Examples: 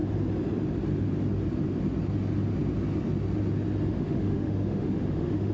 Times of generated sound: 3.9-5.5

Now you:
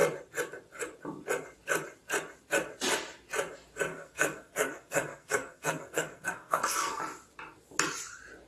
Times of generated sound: 3.9-7.0

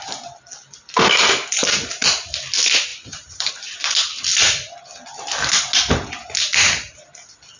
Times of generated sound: 2.9-3.5

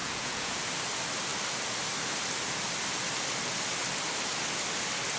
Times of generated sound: 0.0-0.6

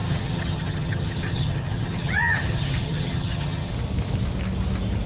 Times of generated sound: 0.0-3.7

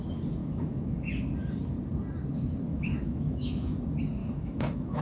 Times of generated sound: 0.4-1.1; 2.7-3.8; 4.2-5.0